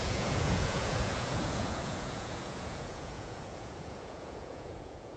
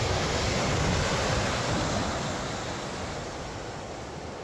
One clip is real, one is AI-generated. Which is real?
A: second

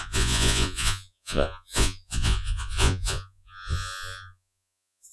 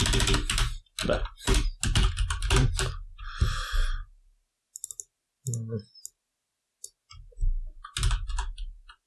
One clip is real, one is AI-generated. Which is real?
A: second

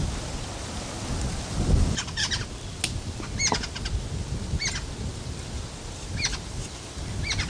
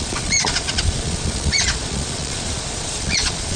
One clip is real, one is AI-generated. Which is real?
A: first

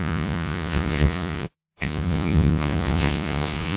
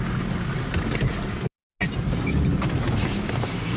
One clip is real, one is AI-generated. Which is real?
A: second